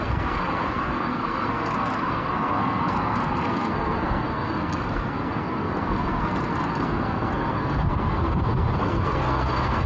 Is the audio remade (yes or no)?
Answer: yes